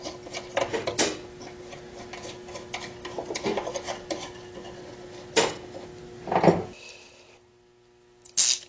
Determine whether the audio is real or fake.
real